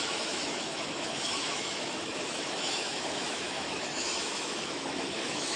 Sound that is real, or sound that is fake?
fake